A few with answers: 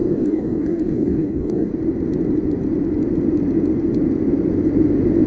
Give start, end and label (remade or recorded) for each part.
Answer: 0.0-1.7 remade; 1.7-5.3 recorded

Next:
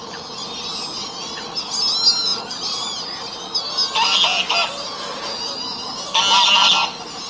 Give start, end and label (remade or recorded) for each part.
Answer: 0.0-7.3 recorded